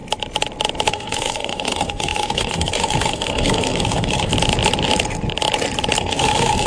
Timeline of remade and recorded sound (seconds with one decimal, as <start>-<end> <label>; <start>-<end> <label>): 0.0-0.9 recorded; 0.9-4.3 remade; 4.3-6.0 recorded; 6.0-6.7 remade